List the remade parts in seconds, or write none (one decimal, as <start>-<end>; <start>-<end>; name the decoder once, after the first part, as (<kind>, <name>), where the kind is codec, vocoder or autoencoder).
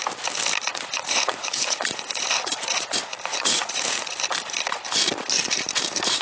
0.7-4.1 (vocoder, Vocos)